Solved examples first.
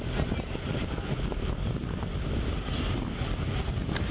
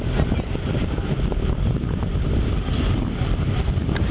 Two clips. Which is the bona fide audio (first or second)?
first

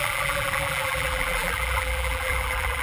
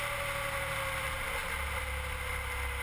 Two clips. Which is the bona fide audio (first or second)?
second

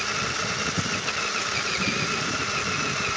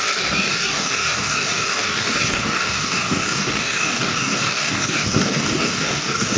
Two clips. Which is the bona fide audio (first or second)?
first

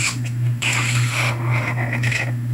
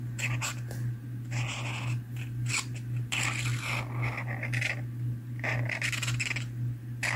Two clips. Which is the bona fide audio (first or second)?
second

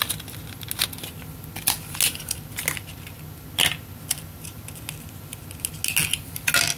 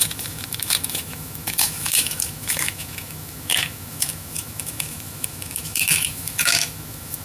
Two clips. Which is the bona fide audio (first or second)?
first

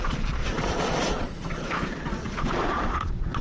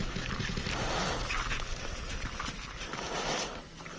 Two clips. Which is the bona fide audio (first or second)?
second